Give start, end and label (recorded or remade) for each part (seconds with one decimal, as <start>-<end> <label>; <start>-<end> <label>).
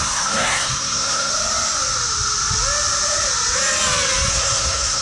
0.0-1.3 remade; 1.3-4.3 recorded; 4.3-5.0 remade